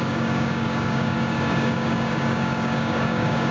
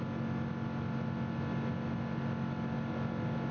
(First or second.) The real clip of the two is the second